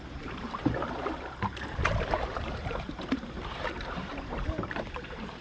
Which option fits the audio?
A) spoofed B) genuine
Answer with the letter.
A